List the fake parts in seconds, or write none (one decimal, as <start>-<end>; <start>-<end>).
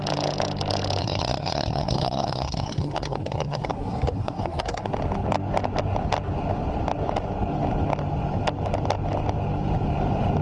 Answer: 1.0-4.9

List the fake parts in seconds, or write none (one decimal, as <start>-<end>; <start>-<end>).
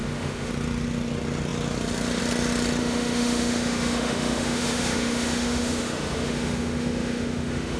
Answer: 0.0-0.5; 2.8-7.8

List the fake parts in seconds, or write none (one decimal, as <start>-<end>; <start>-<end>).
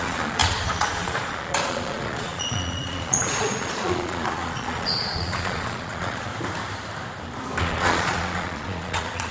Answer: 0.0-6.3; 7.6-9.3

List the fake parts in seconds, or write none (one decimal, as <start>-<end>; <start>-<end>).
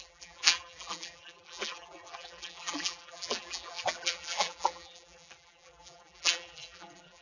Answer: 0.0-7.2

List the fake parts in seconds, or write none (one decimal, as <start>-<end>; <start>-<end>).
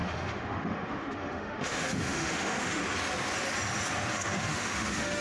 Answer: 0.0-2.8; 4.1-5.2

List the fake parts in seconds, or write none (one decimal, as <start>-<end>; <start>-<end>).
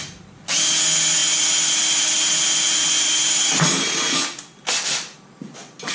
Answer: none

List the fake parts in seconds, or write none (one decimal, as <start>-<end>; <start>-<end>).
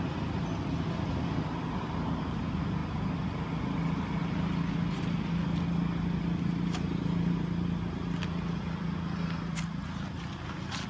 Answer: none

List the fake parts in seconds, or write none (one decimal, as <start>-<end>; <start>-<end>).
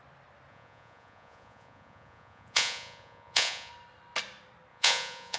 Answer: 0.5-3.7; 4.7-5.4